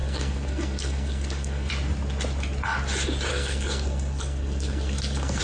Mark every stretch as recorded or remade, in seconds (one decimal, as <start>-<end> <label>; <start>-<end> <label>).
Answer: 0.0-1.7 remade; 1.7-3.3 recorded; 3.3-5.4 remade